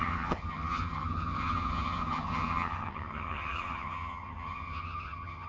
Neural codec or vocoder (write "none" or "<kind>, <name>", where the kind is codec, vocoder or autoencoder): vocoder, HiFi-GAN